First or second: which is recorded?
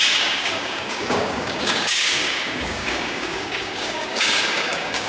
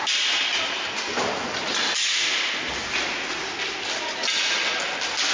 second